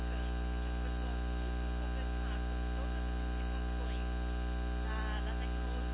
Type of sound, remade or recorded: recorded